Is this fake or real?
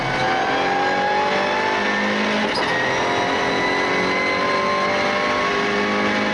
real